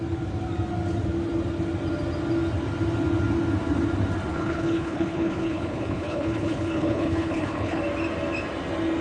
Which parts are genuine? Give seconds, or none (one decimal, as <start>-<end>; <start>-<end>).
0.0-4.3; 7.8-9.0